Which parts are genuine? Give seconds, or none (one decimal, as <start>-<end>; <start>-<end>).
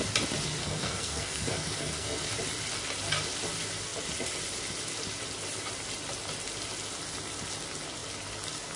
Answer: 0.0-0.6; 2.3-8.8